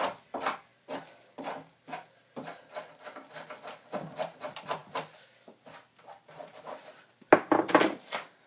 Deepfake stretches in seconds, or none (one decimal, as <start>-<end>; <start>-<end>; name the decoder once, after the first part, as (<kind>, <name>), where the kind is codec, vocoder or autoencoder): 0.0-8.5 (vocoder, BigVGAN v2)